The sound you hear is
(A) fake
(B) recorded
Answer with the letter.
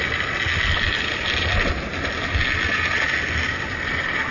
B